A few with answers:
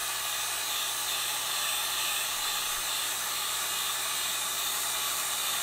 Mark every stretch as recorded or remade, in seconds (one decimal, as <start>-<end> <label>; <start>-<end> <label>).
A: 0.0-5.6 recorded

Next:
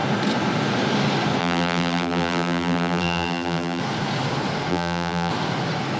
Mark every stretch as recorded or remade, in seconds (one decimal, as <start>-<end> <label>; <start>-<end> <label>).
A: 0.0-1.4 recorded; 1.4-3.8 remade; 3.8-4.7 recorded; 4.7-5.3 remade; 5.3-6.0 recorded

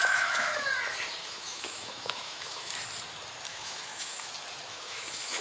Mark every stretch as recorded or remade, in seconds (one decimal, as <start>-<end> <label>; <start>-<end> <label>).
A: 0.0-0.6 remade; 0.6-1.2 recorded; 1.2-2.7 remade; 2.7-3.5 recorded; 3.5-4.3 remade; 4.3-4.7 recorded; 4.7-5.4 remade